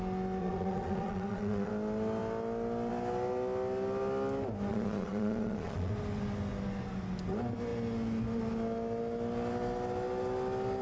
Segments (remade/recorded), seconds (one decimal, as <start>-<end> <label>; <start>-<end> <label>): 0.0-0.4 recorded; 0.4-1.7 remade; 1.7-4.7 recorded; 4.7-5.9 remade; 5.9-10.8 recorded